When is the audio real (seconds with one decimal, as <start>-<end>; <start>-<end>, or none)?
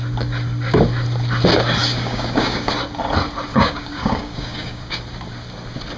0.0-1.8; 2.7-3.5; 5.0-6.0